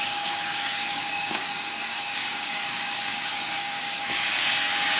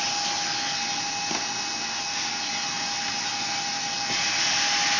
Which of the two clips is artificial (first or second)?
first